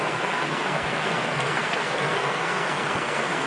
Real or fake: fake